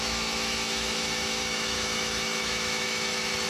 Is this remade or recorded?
remade